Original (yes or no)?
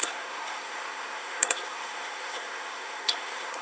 no